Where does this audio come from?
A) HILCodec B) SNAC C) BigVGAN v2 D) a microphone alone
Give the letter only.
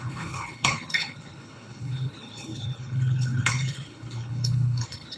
A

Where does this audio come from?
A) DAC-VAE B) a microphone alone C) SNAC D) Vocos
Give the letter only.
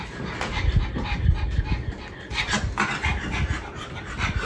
B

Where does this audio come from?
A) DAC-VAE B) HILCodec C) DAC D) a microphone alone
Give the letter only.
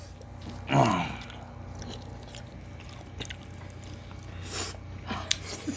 D